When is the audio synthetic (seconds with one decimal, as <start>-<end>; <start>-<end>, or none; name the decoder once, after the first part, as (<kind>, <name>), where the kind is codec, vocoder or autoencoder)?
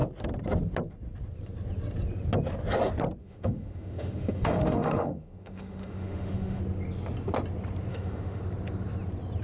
3.2-6.6 (autoencoder, DAC-VAE); 7.9-8.4